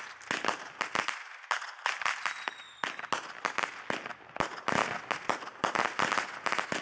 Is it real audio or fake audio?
real